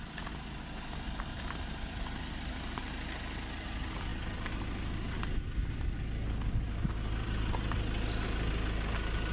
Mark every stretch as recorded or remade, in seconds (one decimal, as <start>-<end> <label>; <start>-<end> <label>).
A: 0.0-9.3 recorded

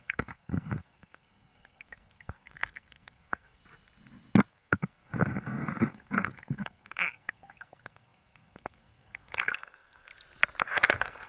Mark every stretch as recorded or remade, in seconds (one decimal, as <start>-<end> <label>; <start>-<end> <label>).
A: 0.0-3.6 remade; 3.6-4.5 recorded; 4.5-10.1 remade; 10.1-10.6 recorded; 10.6-11.3 remade